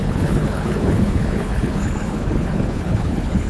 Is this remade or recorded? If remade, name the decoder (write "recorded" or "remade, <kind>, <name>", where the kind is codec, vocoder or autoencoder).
remade, codec, HILCodec